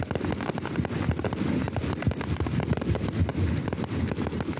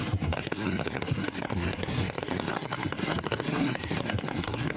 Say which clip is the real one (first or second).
first